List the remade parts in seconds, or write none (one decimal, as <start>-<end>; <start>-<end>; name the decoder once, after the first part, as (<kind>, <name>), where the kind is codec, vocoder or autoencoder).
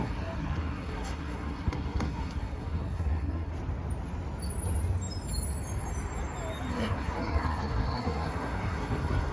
0.0-3.5 (codec, SNAC); 6.7-9.3